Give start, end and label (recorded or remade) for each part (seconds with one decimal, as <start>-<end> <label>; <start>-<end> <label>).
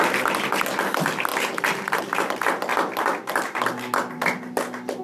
0.0-5.0 recorded